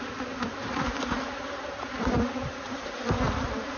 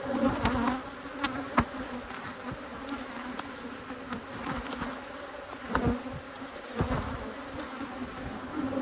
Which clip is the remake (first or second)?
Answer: first